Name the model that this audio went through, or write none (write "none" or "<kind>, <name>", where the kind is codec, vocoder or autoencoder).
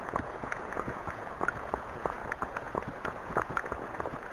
vocoder, Vocos